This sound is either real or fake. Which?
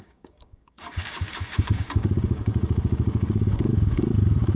fake